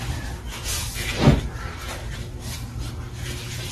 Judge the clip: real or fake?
real